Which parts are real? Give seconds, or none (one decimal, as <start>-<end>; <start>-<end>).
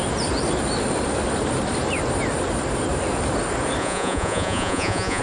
0.0-3.8